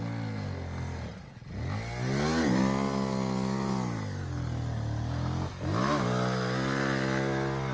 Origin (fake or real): real